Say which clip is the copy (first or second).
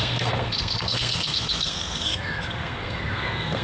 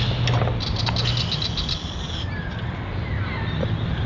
first